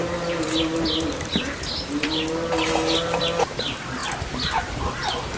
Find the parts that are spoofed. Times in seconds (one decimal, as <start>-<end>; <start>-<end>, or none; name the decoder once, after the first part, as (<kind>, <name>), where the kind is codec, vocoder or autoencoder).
none